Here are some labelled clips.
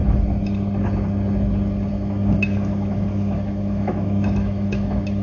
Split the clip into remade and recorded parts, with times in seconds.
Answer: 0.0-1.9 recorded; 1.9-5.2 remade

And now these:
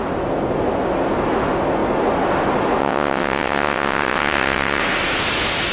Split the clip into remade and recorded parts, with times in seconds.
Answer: 0.0-2.8 recorded; 2.8-4.8 remade; 4.8-5.7 recorded

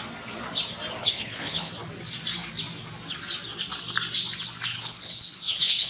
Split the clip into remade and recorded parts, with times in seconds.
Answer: 0.0-1.0 recorded; 1.0-1.7 remade; 1.7-4.7 recorded; 4.7-5.9 remade

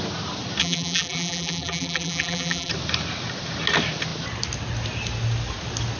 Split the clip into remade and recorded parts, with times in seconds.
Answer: 0.0-0.6 recorded; 0.6-2.7 remade; 2.7-6.0 recorded